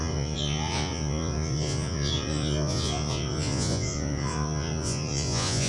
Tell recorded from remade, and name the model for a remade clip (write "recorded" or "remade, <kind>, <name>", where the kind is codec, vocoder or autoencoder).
remade, vocoder, Vocos